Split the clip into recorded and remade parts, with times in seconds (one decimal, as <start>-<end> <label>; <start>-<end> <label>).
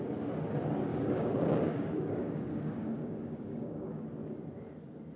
0.0-0.9 recorded; 0.9-4.0 remade; 4.0-5.2 recorded